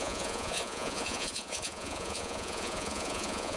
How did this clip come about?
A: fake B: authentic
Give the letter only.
A